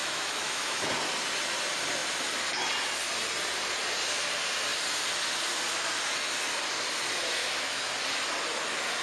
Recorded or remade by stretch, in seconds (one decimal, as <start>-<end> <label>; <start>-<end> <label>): 0.0-0.9 remade; 0.9-7.4 recorded; 7.4-7.9 remade; 7.9-9.0 recorded